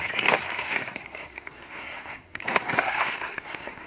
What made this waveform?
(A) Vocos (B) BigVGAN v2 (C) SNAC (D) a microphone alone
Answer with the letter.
C